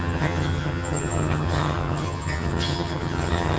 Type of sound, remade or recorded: remade